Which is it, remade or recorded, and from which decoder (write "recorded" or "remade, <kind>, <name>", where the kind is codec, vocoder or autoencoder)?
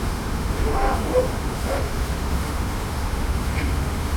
remade, autoencoder, DAC-VAE